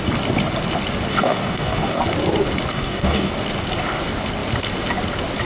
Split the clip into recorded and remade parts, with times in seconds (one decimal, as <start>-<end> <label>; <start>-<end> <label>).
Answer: 0.0-1.1 recorded; 1.1-2.0 remade; 2.0-2.7 recorded; 2.7-3.3 remade; 3.3-5.4 recorded